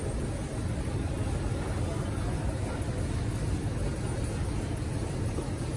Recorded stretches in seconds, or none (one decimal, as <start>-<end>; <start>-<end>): 0.0-5.8